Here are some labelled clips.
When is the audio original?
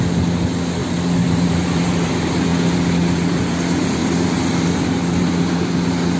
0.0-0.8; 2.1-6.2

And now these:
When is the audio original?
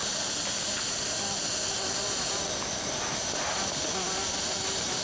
0.0-5.0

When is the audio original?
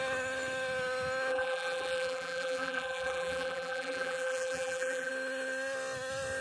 0.0-1.3; 5.1-6.4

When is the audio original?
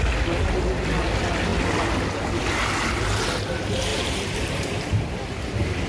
0.0-3.9; 4.8-5.9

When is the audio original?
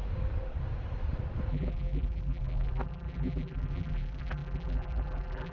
0.0-1.5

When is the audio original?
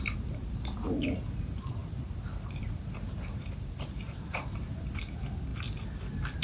5.5-6.4